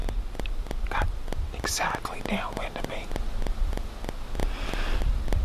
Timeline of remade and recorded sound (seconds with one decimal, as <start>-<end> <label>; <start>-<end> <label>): 0.0-5.4 recorded